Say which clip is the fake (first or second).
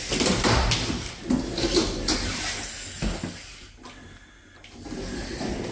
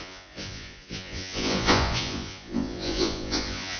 second